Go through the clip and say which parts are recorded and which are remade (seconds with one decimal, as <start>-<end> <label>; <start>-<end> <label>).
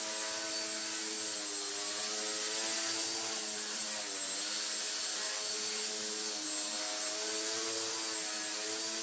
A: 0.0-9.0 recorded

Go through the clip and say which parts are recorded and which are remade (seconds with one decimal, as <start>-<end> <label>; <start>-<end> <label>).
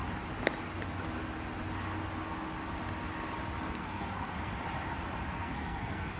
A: 0.0-3.7 recorded; 3.7-4.5 remade; 4.5-5.3 recorded; 5.3-6.2 remade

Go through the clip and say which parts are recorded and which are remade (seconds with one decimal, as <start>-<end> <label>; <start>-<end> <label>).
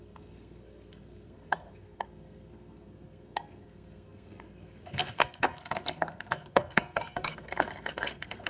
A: 0.0-8.5 remade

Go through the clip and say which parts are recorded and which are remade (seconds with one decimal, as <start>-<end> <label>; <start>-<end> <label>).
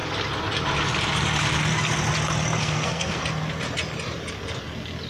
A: 0.0-2.6 recorded; 2.6-3.2 remade; 3.2-5.1 recorded